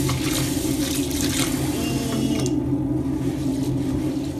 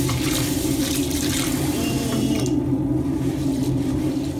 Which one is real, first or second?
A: first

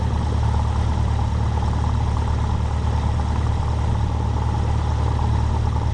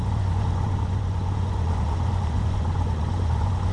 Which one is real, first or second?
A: first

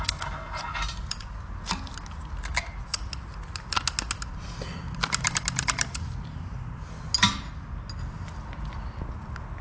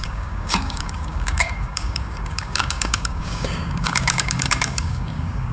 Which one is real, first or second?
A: first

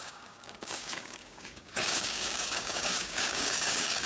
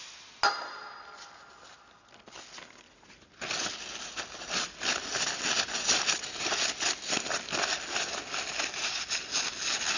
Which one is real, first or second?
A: second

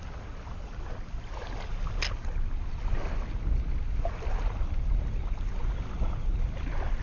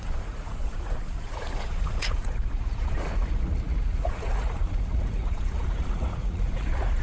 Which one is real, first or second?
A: first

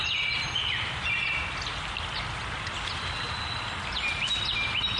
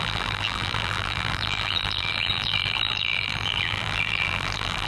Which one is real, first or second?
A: first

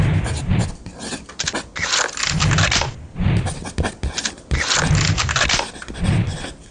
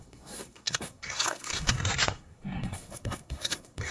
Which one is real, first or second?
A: first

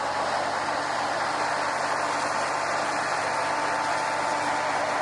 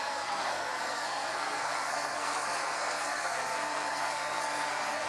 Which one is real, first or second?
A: first